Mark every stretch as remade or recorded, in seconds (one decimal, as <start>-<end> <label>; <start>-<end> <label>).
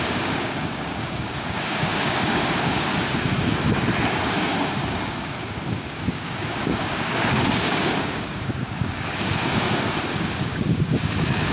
0.0-2.9 remade; 2.9-4.1 recorded; 4.1-11.5 remade